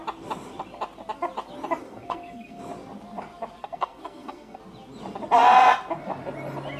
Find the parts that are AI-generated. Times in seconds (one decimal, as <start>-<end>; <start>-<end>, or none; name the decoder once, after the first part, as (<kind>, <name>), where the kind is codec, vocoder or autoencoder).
1.8-2.6 (codec, SNAC); 3.6-4.6